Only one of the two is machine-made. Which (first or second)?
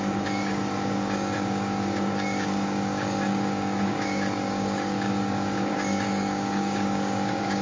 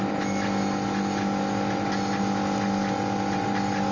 first